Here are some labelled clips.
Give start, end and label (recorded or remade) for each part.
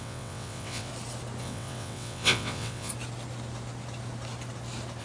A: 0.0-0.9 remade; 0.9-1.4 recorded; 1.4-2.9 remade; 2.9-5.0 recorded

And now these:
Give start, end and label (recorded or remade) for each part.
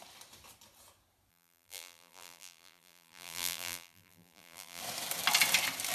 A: 0.0-1.3 recorded; 1.3-4.8 remade; 4.8-5.9 recorded